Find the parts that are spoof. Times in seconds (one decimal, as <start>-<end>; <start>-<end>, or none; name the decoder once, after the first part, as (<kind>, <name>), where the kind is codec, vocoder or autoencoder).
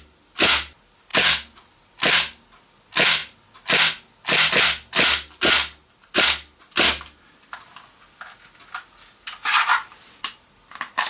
1.1-1.8 (vocoder, BigVGAN v2)